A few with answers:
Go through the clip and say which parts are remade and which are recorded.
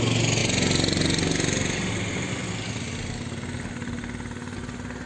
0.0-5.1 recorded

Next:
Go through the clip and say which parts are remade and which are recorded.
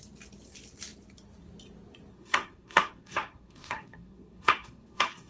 0.0-2.1 recorded; 2.1-5.3 remade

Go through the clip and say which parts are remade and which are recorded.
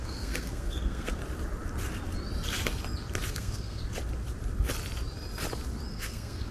0.0-1.2 remade; 1.2-3.3 recorded; 3.3-3.8 remade; 3.8-5.9 recorded; 5.9-6.5 remade